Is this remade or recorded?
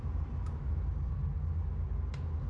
recorded